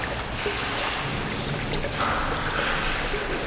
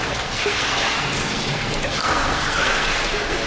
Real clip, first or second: first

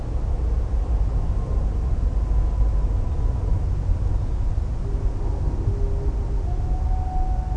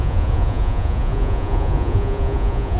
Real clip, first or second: first